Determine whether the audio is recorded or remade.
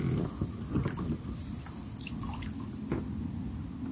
recorded